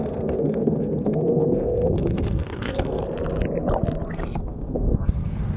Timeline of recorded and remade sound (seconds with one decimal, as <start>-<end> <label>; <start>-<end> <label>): 0.0-3.0 remade; 3.0-4.1 recorded; 4.1-5.6 remade